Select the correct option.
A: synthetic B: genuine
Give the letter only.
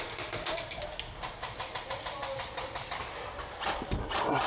B